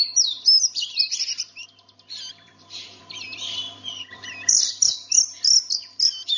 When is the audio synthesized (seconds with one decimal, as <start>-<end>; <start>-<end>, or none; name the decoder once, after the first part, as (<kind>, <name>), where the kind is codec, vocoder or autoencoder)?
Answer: 0.0-6.4 (vocoder, BigVGAN v2)